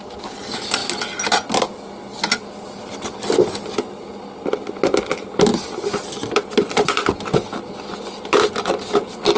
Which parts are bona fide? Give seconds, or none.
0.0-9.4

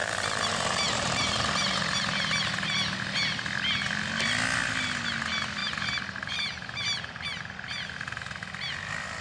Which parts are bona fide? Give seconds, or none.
1.8-5.6; 7.4-9.2

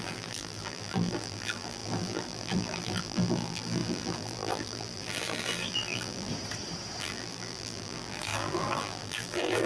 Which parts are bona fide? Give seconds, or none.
6.3-7.0

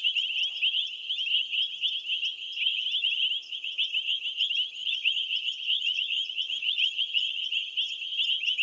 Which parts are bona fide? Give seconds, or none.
0.0-4.8; 7.7-8.6

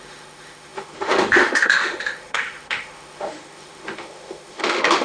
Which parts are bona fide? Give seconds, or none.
none

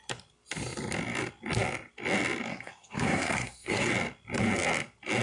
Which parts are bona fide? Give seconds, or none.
0.0-2.5; 3.9-5.2

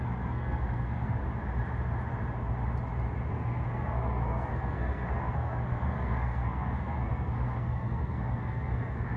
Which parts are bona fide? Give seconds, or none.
1.2-3.3

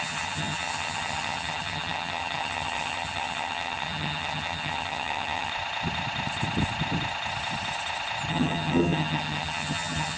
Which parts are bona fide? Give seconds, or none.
5.5-8.3